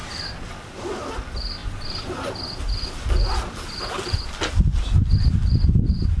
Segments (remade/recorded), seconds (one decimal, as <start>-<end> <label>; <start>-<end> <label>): 0.0-6.2 recorded